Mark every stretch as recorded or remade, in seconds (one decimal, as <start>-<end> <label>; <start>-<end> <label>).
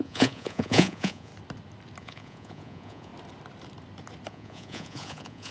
0.0-1.3 remade; 1.3-2.0 recorded; 2.0-3.1 remade; 3.1-4.3 recorded; 4.3-5.5 remade